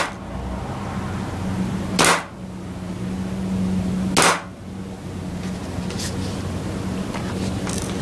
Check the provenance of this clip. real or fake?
real